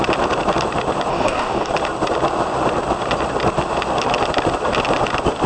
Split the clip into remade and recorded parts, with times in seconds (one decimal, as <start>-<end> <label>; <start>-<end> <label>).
0.0-1.1 recorded; 1.1-1.7 remade; 1.7-5.5 recorded